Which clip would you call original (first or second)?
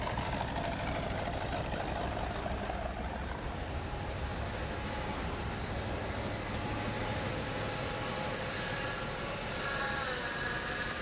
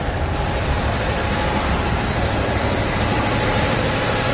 first